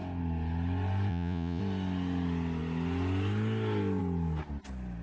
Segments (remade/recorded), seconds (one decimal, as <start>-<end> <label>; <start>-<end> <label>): 0.0-1.1 recorded; 1.1-1.6 remade; 1.6-5.0 recorded